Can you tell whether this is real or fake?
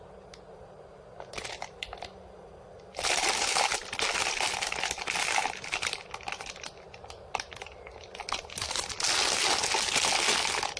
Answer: real